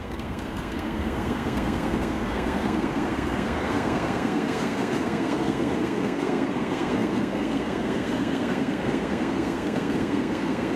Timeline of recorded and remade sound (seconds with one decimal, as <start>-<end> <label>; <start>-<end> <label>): 0.0-10.8 remade